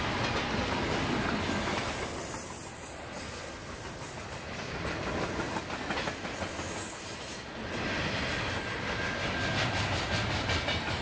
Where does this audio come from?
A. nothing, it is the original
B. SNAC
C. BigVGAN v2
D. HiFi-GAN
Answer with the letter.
A